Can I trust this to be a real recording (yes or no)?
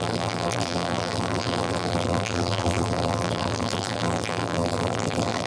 no